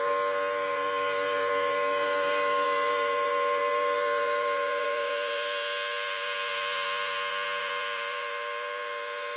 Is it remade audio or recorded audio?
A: remade